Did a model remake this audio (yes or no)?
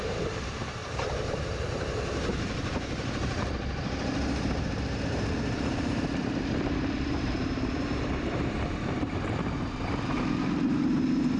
yes